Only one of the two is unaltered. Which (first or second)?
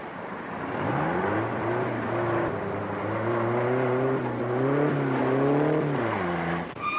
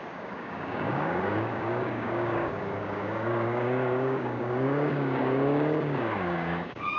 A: first